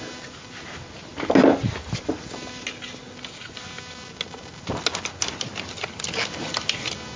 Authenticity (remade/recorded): recorded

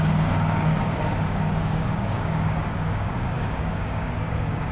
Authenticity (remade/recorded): remade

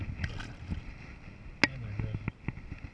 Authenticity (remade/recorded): recorded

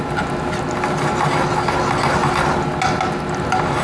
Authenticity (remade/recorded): recorded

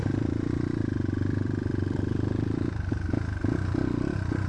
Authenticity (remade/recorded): recorded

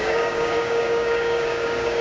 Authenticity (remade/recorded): remade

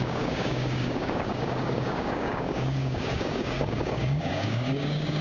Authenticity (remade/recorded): remade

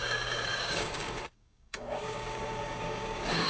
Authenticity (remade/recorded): remade